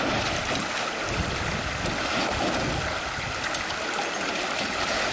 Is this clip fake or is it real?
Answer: real